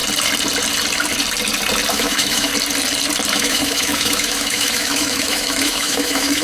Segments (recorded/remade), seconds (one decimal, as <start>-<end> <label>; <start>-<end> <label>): 0.0-1.9 recorded; 1.9-2.5 remade; 2.5-3.3 recorded; 3.3-6.4 remade